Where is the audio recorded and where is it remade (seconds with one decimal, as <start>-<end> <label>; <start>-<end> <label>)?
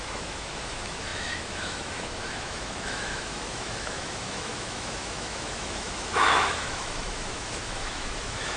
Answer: 0.0-8.6 remade